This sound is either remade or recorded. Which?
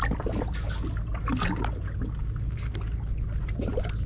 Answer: recorded